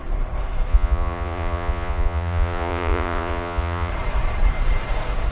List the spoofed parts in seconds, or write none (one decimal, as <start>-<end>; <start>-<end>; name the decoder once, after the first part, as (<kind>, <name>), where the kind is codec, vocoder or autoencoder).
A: 0.7-3.9 (vocoder, Vocos)